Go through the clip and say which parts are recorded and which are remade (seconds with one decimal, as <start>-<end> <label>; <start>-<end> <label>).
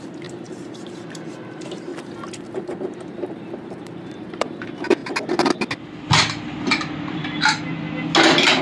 0.0-1.9 remade; 1.9-2.9 recorded; 2.9-5.0 remade; 5.0-6.7 recorded; 6.7-7.2 remade; 7.2-8.6 recorded